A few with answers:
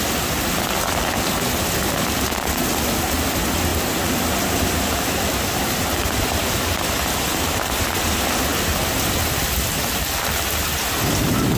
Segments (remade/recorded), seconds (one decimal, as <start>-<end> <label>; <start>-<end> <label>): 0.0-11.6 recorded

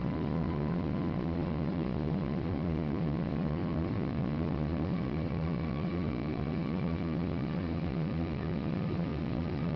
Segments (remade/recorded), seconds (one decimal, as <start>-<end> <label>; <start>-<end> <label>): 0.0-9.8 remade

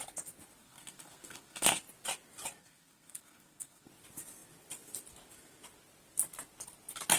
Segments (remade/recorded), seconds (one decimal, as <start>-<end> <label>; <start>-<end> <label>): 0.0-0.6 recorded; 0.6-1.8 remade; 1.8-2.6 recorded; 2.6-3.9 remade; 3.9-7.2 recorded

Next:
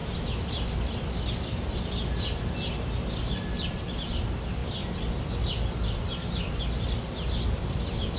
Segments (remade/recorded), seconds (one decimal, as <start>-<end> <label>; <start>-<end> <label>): 0.0-8.2 recorded

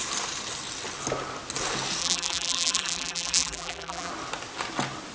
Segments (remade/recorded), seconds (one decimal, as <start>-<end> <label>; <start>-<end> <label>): 0.0-2.0 recorded; 2.0-4.1 remade; 4.1-5.1 recorded

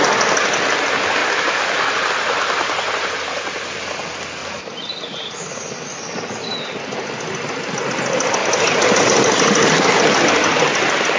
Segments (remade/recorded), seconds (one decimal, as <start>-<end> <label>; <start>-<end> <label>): 0.0-11.2 recorded

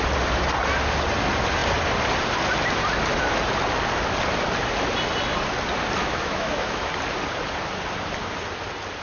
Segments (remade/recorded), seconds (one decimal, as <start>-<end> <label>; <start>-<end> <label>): 0.0-6.0 recorded; 6.0-6.9 remade; 6.9-9.0 recorded

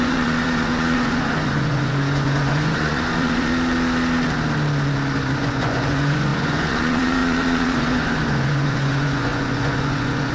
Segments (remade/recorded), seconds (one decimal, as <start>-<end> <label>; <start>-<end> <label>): 0.0-3.5 remade; 3.5-5.4 recorded; 5.4-10.3 remade